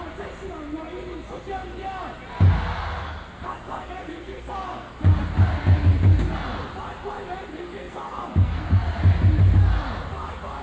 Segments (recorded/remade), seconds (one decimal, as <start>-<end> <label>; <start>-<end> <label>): 0.0-3.0 recorded; 3.0-4.9 remade; 4.9-7.5 recorded; 7.5-9.0 remade; 9.0-10.6 recorded